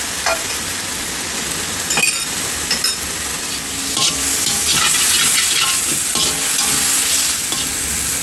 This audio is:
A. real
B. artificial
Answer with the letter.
A